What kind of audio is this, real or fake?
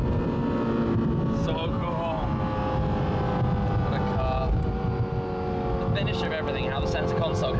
real